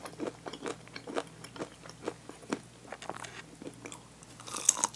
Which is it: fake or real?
real